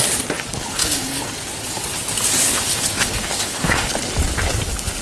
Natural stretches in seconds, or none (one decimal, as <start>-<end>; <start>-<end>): 0.0-0.6; 1.3-2.4; 3.9-5.0

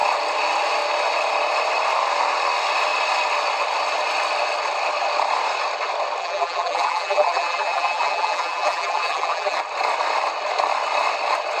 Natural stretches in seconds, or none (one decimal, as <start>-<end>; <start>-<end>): 0.0-6.2; 9.6-11.6

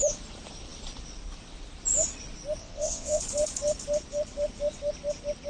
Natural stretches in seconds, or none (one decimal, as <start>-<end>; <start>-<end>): 0.0-2.6; 3.2-5.5

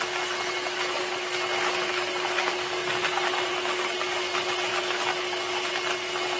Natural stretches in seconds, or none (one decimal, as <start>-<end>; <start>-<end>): 0.0-6.4

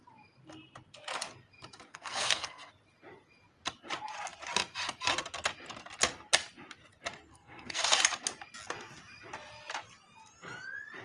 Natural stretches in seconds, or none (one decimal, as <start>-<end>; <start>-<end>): 0.0-1.9; 2.7-7.3; 7.8-11.0